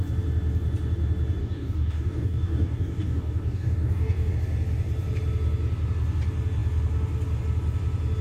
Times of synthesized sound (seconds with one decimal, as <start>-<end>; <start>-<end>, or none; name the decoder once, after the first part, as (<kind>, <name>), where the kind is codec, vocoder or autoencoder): 1.4-4.3 (codec, DAC)